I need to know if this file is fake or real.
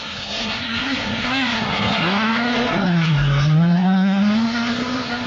fake